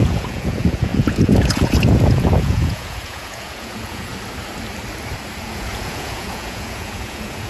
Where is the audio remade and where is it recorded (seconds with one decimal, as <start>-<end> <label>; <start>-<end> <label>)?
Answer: 0.0-4.1 remade; 4.1-5.4 recorded; 5.4-7.5 remade